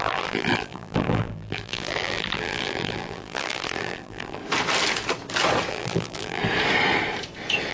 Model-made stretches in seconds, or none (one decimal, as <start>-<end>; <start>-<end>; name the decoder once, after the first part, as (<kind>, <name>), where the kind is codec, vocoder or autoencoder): 0.0-4.4 (vocoder, BigVGAN v2); 5.7-6.4